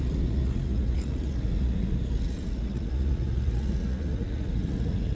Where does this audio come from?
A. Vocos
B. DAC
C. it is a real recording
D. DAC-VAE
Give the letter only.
A